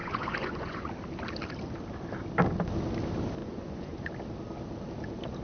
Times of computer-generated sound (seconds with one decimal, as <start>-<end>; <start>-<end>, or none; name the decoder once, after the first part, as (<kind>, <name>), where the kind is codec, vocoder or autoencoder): 0.0-0.9 (vocoder, Vocos); 3.4-4.1